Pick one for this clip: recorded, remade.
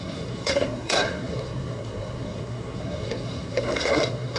remade